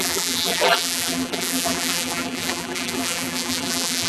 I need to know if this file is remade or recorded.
remade